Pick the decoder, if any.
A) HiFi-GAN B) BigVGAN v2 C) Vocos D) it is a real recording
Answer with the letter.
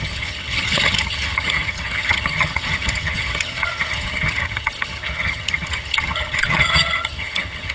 A